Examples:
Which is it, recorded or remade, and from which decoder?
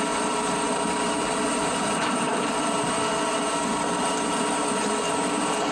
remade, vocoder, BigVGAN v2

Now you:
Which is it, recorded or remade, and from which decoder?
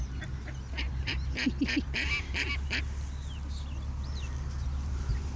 recorded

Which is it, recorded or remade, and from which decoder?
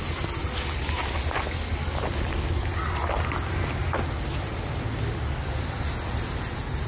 recorded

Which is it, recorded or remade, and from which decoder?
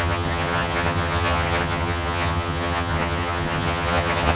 remade, vocoder, HiFi-GAN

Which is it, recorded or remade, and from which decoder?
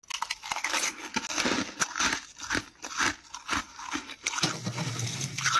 recorded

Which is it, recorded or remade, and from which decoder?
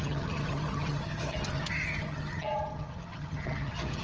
remade, vocoder, HiFi-GAN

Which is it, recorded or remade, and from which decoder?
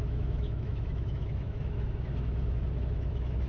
remade, autoencoder, DAC-VAE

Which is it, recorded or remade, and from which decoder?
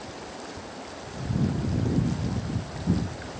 recorded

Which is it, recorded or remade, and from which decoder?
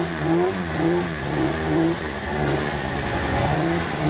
remade, vocoder, Vocos